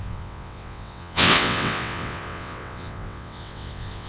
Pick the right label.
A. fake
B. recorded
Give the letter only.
A